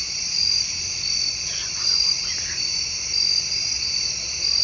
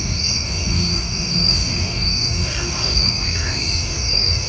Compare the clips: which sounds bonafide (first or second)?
first